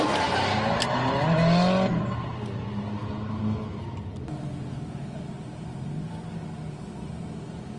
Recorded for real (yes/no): yes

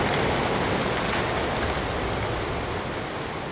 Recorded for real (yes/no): yes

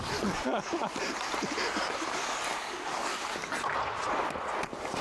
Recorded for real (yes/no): no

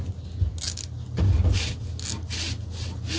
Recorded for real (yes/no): yes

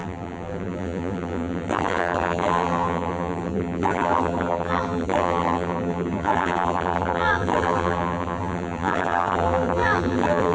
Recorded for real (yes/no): no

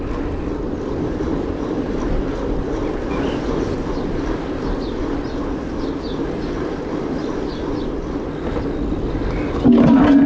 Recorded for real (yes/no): yes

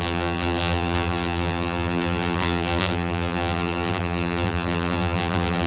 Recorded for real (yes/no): no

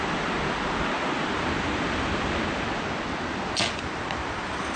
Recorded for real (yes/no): yes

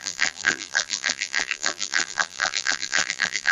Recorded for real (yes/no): no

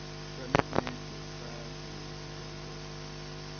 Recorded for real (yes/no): no